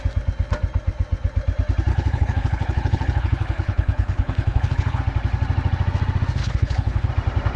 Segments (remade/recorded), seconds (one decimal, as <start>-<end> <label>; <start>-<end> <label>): 0.0-1.9 recorded; 1.9-5.0 remade; 5.0-6.4 recorded; 6.4-7.1 remade; 7.1-7.6 recorded